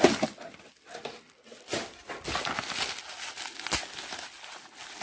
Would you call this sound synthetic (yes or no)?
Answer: no